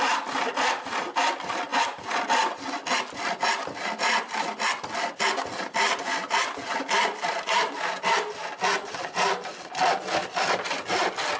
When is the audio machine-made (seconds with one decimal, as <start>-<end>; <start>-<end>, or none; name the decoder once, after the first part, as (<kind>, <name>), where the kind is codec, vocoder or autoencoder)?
none